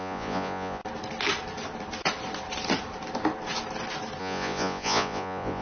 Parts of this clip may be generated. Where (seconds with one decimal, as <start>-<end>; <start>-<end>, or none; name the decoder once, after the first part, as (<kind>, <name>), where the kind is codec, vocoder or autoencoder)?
0.0-0.8 (vocoder, Vocos); 4.2-5.6